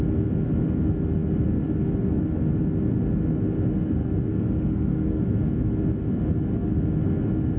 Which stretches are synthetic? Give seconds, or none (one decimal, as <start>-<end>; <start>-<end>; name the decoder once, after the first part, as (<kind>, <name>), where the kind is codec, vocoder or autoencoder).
4.3-5.2 (codec, SNAC)